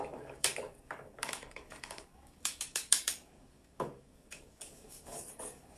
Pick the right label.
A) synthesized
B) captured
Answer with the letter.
A